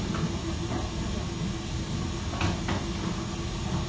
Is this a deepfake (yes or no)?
no